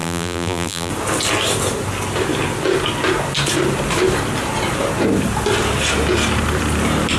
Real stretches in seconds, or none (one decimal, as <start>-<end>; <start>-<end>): 0.9-7.2